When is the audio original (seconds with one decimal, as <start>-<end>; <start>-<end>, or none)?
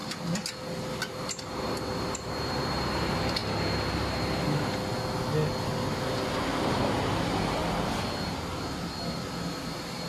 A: 0.0-1.2; 3.4-6.6; 7.6-8.5